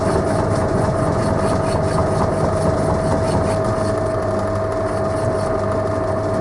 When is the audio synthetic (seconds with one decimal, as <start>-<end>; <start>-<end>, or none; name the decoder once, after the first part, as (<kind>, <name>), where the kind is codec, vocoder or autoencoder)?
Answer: 0.6-1.2 (vocoder, Vocos)